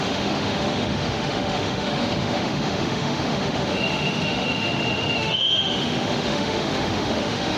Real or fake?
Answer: fake